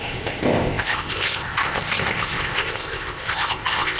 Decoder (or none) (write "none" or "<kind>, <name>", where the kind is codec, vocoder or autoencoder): codec, ZipCodec